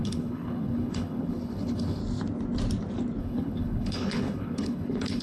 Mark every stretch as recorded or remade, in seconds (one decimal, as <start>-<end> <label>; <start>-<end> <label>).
0.0-2.0 remade; 2.0-3.2 recorded; 3.2-5.2 remade

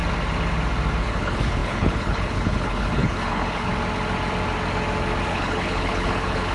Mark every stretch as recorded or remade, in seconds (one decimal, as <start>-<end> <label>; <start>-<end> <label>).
0.0-1.0 recorded; 1.0-3.7 remade; 3.7-5.3 recorded; 5.3-6.5 remade